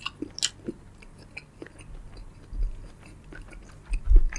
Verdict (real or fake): real